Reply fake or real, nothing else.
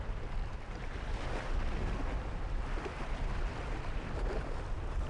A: real